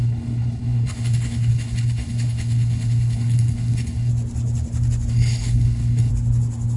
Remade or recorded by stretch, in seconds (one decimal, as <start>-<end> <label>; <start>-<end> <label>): 0.0-4.1 remade; 4.1-5.1 recorded; 5.1-6.1 remade; 6.1-6.8 recorded